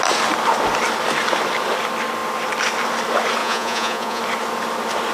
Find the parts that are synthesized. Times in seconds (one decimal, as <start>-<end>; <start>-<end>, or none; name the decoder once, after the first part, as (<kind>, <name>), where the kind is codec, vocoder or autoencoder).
3.4-4.2 (vocoder, Vocos)